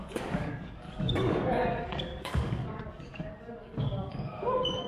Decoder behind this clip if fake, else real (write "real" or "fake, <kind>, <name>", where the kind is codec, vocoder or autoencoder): fake, codec, DAC